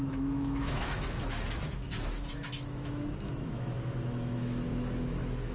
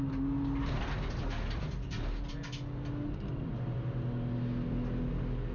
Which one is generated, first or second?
first